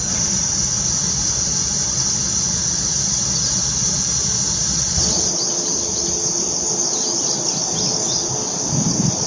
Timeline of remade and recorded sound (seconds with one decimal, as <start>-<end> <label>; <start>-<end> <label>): 0.0-9.3 recorded